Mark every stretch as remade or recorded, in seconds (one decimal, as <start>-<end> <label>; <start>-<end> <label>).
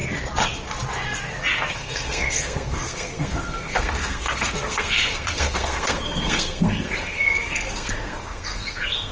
0.0-1.7 recorded; 1.7-9.1 remade